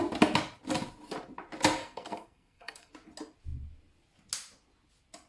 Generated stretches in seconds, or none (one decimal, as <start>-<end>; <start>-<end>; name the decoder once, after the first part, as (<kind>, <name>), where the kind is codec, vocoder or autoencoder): 1.8-2.9 (codec, SNAC)